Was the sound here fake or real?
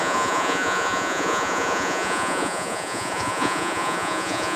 fake